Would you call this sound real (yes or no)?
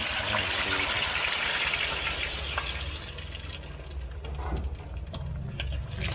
yes